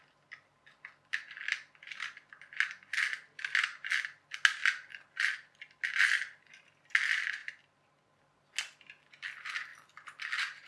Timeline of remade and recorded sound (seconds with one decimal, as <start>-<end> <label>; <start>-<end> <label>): 0.0-4.6 recorded; 4.6-5.5 remade; 5.5-9.7 recorded; 9.7-10.7 remade